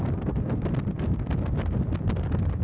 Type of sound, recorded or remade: recorded